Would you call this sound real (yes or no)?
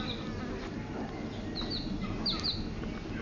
yes